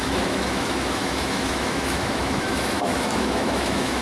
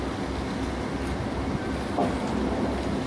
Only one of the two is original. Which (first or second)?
second